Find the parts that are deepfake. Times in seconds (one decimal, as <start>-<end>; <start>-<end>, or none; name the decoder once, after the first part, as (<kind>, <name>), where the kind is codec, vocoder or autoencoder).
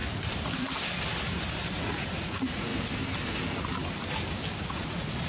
1.8-2.7 (vocoder, Vocos); 4.6-5.3